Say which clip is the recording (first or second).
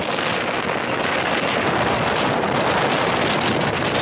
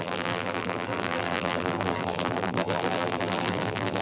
first